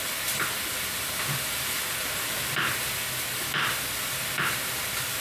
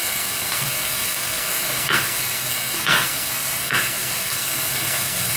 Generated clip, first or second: second